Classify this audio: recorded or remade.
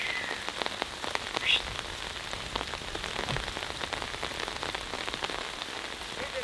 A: recorded